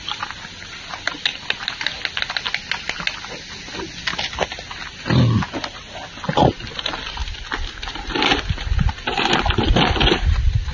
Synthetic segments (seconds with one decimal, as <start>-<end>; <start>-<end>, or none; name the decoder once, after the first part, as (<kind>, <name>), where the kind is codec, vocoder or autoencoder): none